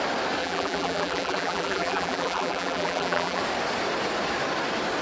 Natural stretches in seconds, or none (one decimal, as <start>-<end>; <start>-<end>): 0.0-0.4; 3.4-5.0